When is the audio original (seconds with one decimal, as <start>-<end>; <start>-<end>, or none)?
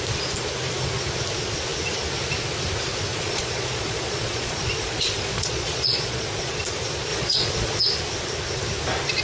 0.0-3.1; 6.6-7.1; 7.8-9.2